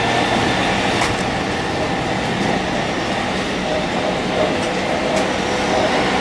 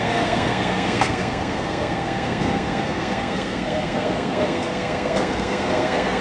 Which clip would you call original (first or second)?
first